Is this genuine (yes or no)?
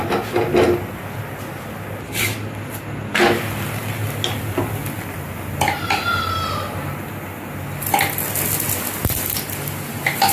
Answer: yes